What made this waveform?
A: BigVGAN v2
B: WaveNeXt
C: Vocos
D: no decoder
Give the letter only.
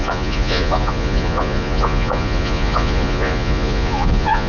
C